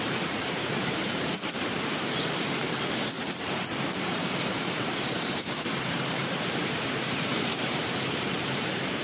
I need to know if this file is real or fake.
fake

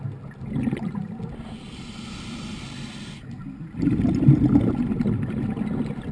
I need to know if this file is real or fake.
fake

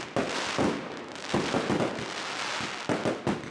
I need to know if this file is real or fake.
real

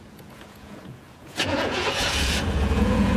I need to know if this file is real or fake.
fake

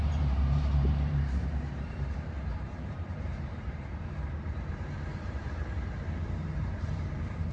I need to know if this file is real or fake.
fake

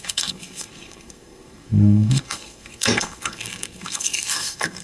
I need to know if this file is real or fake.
fake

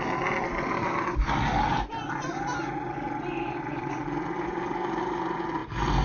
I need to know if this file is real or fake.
real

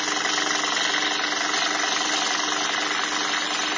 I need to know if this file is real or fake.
real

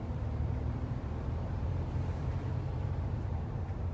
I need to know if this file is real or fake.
fake